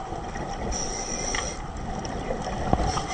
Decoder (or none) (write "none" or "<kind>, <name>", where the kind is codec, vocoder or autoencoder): none